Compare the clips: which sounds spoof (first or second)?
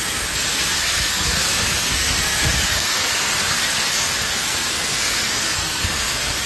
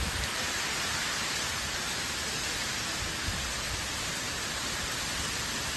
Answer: first